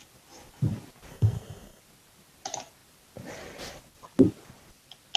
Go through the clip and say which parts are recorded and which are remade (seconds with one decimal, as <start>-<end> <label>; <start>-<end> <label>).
0.0-1.1 recorded; 1.1-1.8 remade; 1.8-5.2 recorded